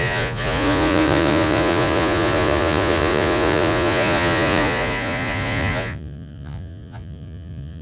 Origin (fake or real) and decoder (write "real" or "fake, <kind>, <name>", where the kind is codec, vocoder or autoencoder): fake, vocoder, Vocos